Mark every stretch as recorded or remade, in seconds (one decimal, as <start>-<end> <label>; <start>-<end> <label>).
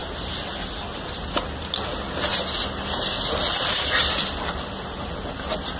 0.0-3.5 recorded; 3.5-5.8 remade